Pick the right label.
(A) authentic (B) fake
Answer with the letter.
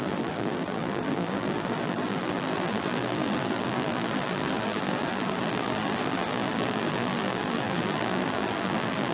B